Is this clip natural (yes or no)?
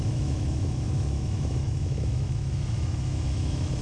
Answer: no